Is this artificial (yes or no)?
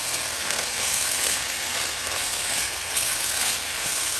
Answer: yes